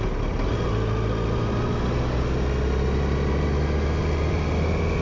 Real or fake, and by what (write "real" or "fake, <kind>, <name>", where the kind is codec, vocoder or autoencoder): real